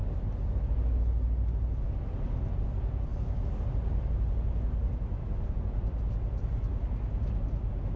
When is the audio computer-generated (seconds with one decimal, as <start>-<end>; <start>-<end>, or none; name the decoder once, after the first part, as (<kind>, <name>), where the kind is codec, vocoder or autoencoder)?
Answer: none